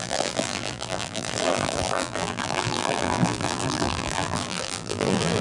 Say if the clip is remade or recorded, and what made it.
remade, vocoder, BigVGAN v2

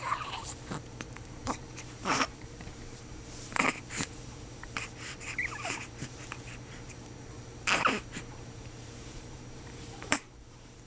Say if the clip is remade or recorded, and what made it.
remade, vocoder, BigVGAN v2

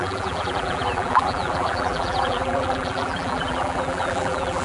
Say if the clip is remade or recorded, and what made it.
remade, vocoder, BigVGAN v2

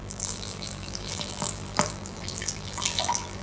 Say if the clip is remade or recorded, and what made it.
remade, vocoder, BigVGAN v2